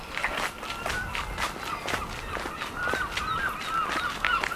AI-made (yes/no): no